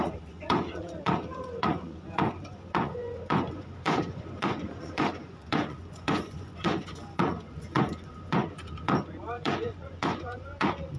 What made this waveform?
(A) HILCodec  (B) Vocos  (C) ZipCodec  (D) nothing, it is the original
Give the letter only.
B